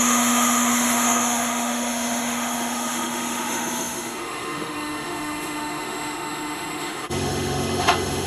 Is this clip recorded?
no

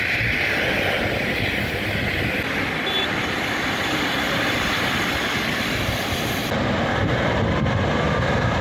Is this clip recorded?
yes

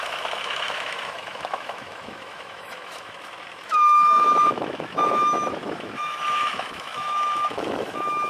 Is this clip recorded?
no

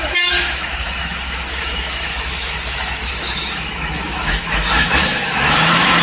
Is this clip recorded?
no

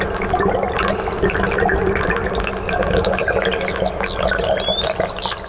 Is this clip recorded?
yes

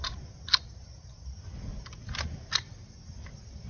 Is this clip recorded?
yes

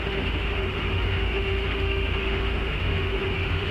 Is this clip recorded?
no